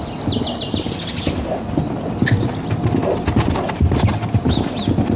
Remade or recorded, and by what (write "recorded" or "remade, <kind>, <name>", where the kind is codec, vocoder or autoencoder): recorded